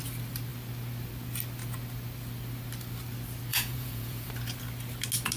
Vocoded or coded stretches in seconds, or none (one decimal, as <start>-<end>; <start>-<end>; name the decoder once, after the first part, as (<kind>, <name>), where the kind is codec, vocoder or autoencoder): 3.5-4.3 (vocoder, Vocos)